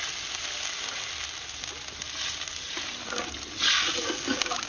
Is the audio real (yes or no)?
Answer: yes